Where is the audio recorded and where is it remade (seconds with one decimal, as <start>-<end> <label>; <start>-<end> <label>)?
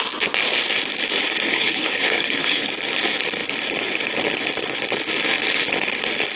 0.0-1.5 recorded; 1.5-2.7 remade; 2.7-6.4 recorded